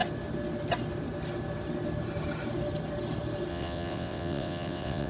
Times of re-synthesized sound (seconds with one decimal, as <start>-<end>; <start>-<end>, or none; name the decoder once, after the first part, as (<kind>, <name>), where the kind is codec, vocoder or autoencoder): 3.5-5.1 (vocoder, WaveNeXt)

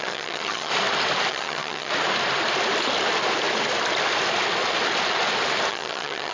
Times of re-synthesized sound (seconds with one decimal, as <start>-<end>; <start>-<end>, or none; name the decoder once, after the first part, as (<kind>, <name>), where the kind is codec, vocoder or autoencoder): 0.0-0.7 (vocoder, HiFi-GAN); 1.3-1.9; 5.7-6.3